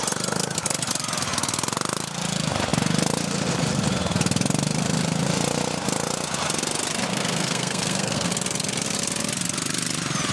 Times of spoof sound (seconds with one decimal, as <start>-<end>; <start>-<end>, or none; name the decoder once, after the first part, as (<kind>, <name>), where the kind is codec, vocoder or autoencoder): 7.1-8.3 (codec, SNAC)